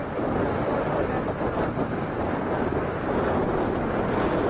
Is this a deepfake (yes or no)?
no